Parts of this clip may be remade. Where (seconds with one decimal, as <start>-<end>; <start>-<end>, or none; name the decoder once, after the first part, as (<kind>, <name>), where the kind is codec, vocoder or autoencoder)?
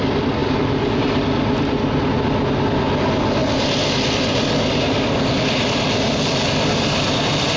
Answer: none